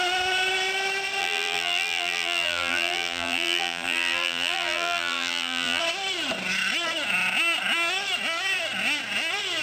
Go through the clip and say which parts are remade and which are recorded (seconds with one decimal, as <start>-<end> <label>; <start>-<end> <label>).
0.0-1.2 recorded; 1.2-5.8 remade; 5.8-9.6 recorded